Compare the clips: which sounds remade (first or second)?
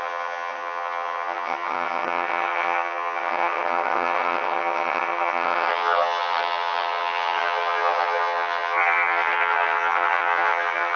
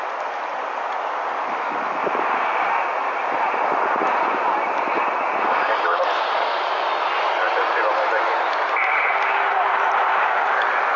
first